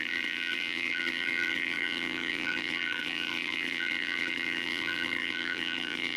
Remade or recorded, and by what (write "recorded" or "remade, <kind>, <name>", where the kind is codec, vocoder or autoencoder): remade, vocoder, BigVGAN v2